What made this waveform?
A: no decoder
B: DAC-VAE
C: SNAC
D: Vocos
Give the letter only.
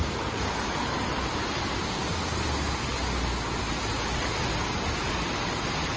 A